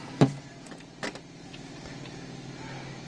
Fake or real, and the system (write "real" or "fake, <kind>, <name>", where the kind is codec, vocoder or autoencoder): real